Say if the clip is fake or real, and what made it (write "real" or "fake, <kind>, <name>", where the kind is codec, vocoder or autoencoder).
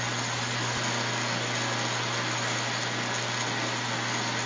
real